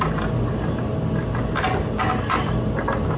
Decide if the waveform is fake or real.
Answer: real